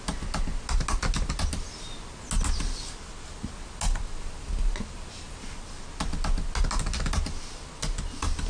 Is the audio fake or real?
real